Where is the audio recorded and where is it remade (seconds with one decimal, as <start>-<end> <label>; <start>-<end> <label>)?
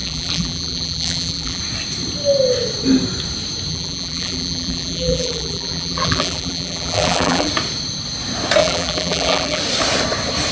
0.0-1.6 remade; 1.6-3.7 recorded; 3.7-7.5 remade; 7.5-8.6 recorded; 8.6-9.6 remade; 9.6-10.5 recorded